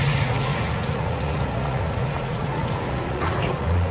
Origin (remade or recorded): remade